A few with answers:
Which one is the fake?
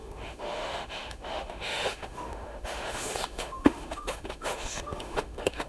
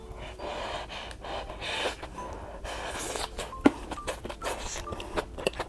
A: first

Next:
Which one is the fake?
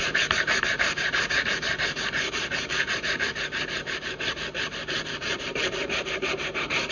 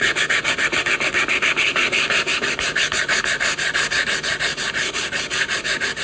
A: first